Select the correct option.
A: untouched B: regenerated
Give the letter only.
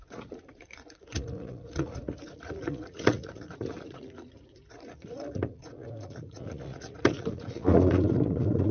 B